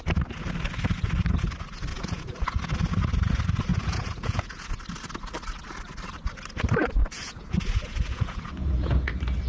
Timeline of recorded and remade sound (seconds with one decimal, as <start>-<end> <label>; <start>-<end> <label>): 0.0-1.9 recorded; 1.9-2.6 remade; 2.6-3.7 recorded; 3.7-4.7 remade; 4.7-7.0 recorded; 7.0-9.1 remade; 9.1-9.5 recorded